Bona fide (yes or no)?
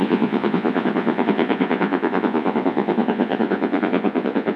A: no